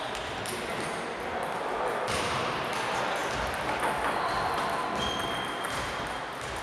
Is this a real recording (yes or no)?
yes